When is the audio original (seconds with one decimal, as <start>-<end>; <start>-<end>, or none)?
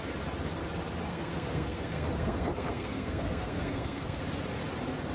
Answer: 0.0-1.1; 4.2-5.1